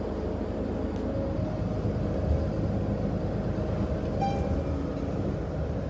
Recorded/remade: recorded